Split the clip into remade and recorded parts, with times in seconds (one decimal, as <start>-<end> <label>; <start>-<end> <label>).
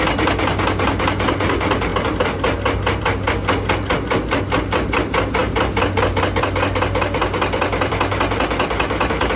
0.0-9.4 recorded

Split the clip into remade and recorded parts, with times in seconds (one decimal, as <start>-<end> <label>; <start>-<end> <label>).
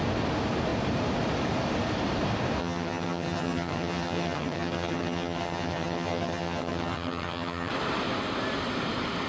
0.0-2.6 recorded; 2.6-7.7 remade; 7.7-9.3 recorded